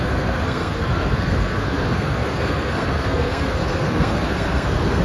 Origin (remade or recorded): remade